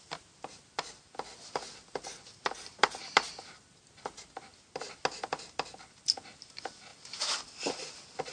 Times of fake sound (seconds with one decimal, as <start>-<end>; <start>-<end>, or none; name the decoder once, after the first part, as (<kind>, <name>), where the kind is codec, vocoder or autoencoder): none